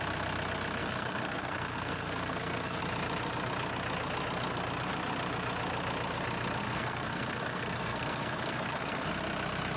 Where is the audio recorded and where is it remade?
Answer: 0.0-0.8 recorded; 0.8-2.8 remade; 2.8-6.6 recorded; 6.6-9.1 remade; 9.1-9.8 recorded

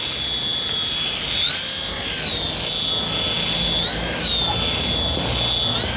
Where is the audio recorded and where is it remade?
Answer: 0.0-6.0 recorded

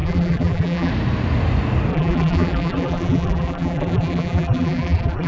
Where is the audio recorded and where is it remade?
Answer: 0.0-0.9 remade; 0.9-1.9 recorded; 1.9-5.3 remade

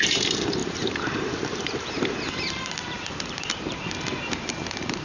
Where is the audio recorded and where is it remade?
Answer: 0.0-5.0 remade

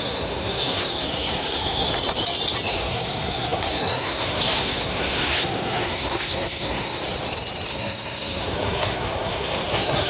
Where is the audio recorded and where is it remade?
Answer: 0.0-1.9 remade; 1.9-2.7 recorded; 2.7-7.0 remade; 7.0-7.7 recorded; 7.7-10.1 remade

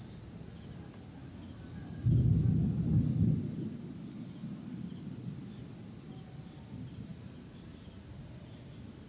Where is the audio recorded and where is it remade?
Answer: 0.0-9.1 recorded